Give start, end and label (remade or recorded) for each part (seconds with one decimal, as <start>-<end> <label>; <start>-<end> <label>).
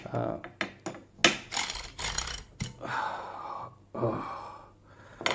0.0-5.3 recorded